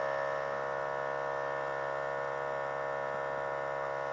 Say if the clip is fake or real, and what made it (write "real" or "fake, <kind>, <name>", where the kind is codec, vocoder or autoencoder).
real